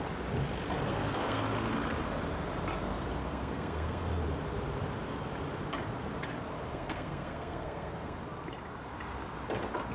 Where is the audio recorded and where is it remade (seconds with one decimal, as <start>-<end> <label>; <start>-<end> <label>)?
0.0-0.9 recorded; 0.9-1.4 remade; 1.4-3.2 recorded; 3.2-4.1 remade; 4.1-6.7 recorded; 6.7-8.2 remade; 8.2-9.9 recorded